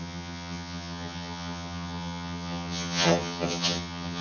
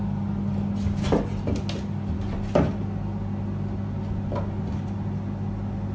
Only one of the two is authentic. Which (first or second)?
second